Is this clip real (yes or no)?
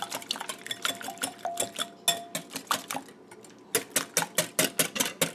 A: yes